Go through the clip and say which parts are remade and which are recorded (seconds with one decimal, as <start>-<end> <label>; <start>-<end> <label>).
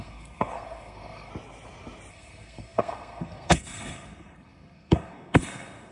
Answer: 0.0-1.3 remade; 1.3-2.1 recorded; 2.1-5.9 remade